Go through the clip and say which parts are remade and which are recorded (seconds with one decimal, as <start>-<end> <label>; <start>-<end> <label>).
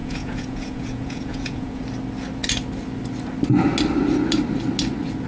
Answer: 0.0-1.8 remade; 1.8-5.3 recorded